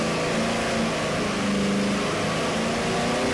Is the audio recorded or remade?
recorded